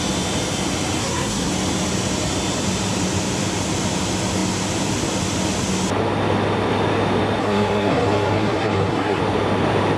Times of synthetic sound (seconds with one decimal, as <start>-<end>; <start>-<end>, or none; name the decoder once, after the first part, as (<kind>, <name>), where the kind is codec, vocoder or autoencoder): 1.0-1.5 (codec, SNAC); 7.4-9.2

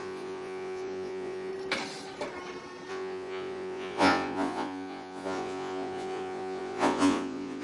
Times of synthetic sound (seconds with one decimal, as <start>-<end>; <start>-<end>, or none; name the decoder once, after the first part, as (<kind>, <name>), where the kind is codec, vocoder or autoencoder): 0.0-1.5 (vocoder, Vocos); 2.9-7.6

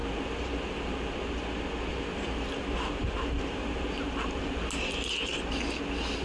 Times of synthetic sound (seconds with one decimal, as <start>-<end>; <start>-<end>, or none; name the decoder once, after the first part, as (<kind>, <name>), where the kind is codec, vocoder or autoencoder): 0.0-1.1 (vocoder, BigVGAN v2); 1.9-4.6

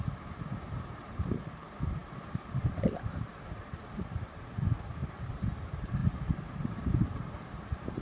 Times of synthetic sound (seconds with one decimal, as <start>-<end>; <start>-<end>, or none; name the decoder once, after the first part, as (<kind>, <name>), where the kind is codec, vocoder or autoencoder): 0.0-8.0 (vocoder, BigVGAN v2)

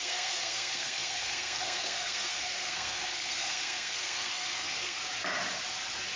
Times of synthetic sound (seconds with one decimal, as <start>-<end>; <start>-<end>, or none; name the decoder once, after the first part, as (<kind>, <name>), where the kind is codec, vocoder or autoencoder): 0.0-5.0 (codec, SNAC)

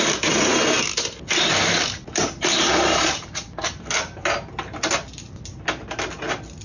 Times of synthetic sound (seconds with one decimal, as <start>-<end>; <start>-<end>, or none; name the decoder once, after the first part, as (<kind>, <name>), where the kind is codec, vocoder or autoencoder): 2.2-4.8 (vocoder, BigVGAN v2)

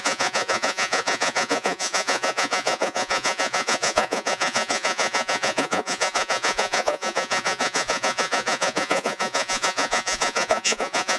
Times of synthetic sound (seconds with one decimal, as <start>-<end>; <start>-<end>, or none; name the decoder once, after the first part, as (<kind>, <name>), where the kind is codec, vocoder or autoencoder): 0.0-11.2 (vocoder, Vocos)

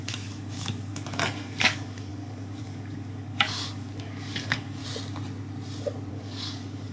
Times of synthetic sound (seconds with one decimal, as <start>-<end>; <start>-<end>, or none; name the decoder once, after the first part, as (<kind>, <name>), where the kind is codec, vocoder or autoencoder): 0.0-4.8 (codec, DAC); 6.1-6.9